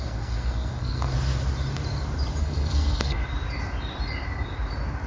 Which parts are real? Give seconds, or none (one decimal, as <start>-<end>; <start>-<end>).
1.1-2.4; 3.2-5.1